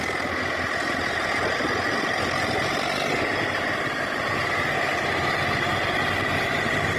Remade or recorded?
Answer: recorded